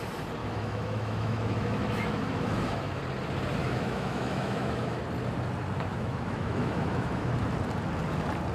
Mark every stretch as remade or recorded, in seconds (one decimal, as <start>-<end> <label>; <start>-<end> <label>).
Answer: 0.0-0.4 recorded; 0.4-3.0 remade; 3.0-3.6 recorded; 3.6-5.0 remade; 5.0-5.9 recorded; 5.9-7.3 remade; 7.3-8.5 recorded